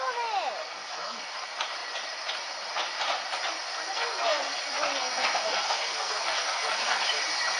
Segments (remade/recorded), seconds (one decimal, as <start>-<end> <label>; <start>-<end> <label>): 0.0-0.6 recorded; 0.6-1.3 remade; 1.3-3.9 recorded; 3.9-4.6 remade; 4.6-5.0 recorded; 5.0-7.0 remade; 7.0-7.6 recorded

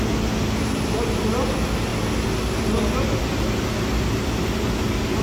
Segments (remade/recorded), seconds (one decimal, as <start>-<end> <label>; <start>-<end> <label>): 0.0-5.2 recorded